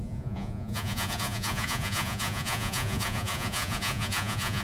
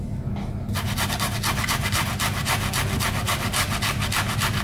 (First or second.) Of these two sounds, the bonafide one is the second